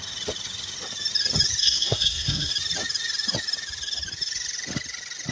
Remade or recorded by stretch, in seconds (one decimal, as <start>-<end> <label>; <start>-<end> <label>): 0.0-1.6 recorded; 1.6-2.5 remade; 2.5-5.3 recorded